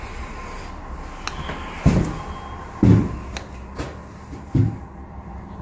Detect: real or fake real